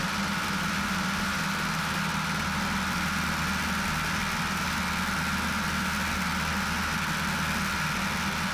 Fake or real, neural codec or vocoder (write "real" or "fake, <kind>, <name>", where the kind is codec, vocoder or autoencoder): real